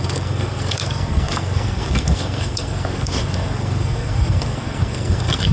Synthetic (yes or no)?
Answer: yes